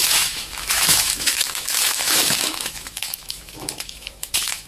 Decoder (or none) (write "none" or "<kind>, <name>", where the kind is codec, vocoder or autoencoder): autoencoder, DAC-VAE